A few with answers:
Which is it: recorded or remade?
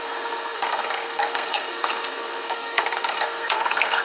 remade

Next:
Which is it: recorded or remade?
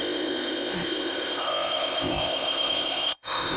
remade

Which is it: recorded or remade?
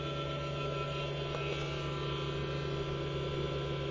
recorded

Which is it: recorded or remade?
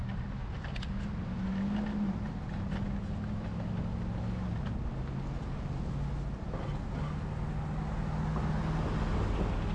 recorded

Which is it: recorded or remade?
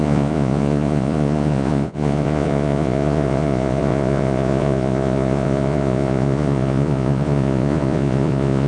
remade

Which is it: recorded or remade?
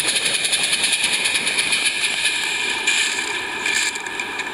remade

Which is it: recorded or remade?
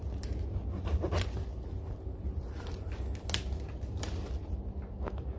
recorded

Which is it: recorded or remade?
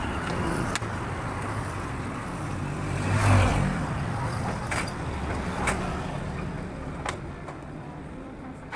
recorded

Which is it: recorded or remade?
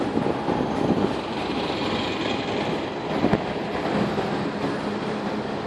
recorded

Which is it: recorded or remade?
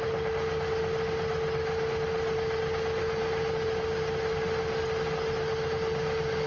recorded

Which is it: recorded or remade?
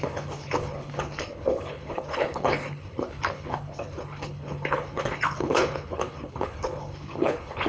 remade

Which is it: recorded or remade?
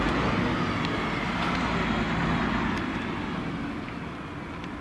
recorded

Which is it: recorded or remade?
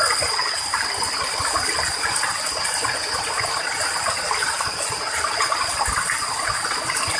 recorded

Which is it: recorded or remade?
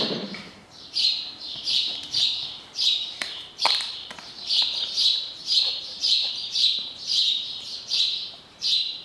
remade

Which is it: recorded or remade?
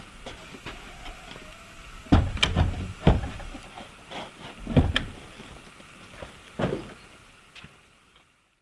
recorded